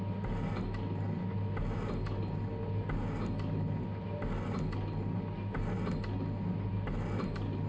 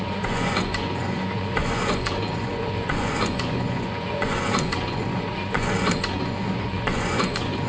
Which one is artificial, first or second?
second